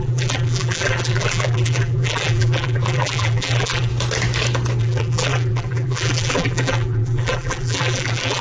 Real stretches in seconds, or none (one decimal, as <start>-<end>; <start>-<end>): 3.9-4.8